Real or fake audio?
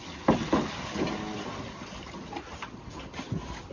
real